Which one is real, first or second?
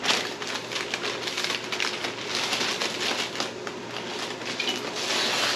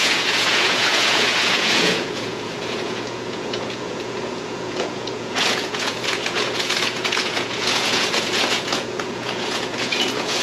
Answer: first